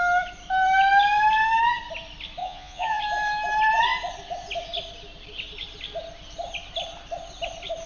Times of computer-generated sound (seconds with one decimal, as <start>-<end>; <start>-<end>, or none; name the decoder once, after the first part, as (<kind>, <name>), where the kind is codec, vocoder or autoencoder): 2.4-3.0 (vocoder, Vocos)